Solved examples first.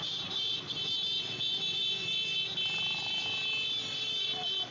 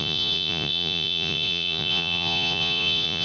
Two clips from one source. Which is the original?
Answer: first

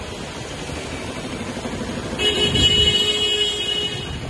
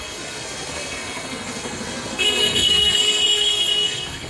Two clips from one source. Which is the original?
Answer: first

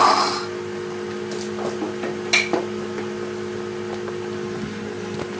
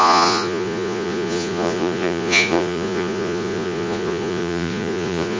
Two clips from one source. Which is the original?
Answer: first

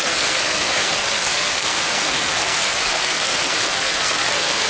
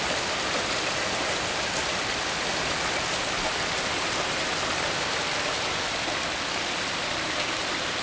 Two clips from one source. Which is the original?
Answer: second